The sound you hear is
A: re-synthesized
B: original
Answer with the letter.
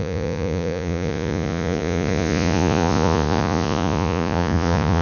A